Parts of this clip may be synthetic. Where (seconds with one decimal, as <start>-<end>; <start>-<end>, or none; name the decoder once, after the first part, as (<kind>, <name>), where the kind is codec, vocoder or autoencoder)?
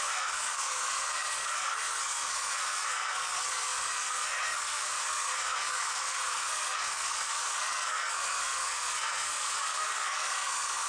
0.0-10.9 (codec, SNAC)